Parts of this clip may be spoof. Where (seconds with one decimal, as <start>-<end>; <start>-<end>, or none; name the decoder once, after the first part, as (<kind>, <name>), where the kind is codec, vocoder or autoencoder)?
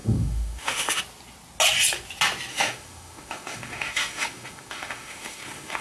0.0-1.0 (autoencoder, DAC-VAE); 2.5-5.8